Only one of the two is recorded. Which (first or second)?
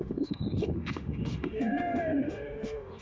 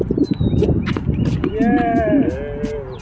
second